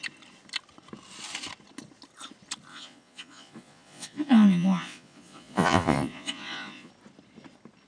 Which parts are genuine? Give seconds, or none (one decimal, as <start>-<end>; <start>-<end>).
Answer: 0.0-2.7; 6.9-7.9